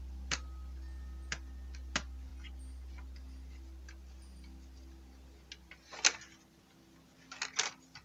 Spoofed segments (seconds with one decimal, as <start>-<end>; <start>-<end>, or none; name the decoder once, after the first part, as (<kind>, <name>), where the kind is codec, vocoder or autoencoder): none